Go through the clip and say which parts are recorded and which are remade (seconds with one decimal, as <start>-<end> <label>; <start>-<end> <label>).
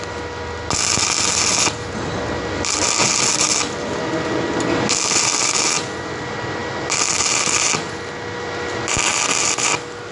0.0-10.1 recorded